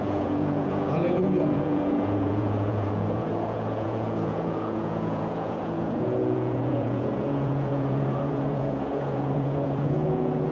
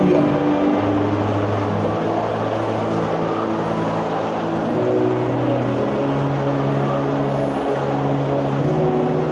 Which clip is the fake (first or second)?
first